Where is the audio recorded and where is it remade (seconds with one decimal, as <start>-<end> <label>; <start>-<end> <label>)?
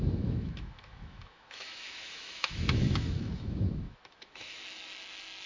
0.0-4.6 remade; 4.6-5.5 recorded